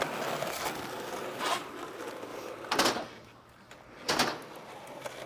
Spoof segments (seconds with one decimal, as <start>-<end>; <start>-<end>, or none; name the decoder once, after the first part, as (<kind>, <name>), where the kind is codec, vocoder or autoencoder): none